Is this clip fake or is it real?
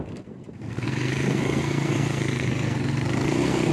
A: fake